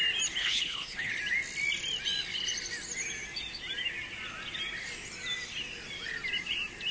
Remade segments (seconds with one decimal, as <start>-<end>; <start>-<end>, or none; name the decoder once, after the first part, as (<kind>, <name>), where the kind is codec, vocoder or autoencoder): 0.4-1.1 (codec, HILCodec)